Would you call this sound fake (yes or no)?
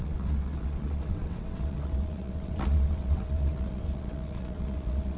yes